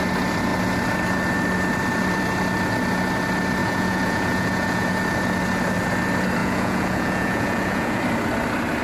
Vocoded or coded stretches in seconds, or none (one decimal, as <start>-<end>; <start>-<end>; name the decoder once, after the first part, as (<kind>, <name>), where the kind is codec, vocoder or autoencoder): 3.6-5.0 (vocoder, Vocos); 6.4-8.0